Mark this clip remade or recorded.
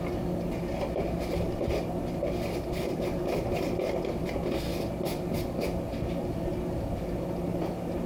recorded